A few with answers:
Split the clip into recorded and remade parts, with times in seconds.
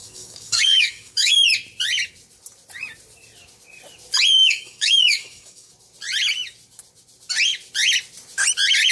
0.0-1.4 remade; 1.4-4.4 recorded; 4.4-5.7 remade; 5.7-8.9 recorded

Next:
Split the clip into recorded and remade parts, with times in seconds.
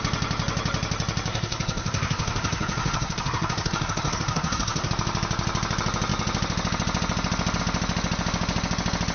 0.0-1.3 recorded; 1.3-4.9 remade; 4.9-9.1 recorded